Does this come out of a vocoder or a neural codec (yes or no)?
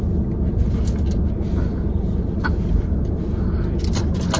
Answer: no